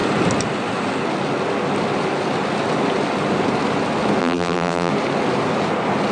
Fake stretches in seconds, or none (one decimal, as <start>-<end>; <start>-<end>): 4.2-4.9